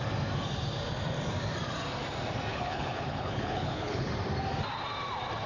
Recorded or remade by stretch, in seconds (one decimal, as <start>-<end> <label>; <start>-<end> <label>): 0.0-2.5 recorded; 2.5-4.1 remade; 4.1-5.5 recorded